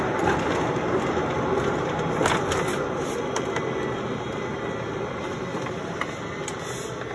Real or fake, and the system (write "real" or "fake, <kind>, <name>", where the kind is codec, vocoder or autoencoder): real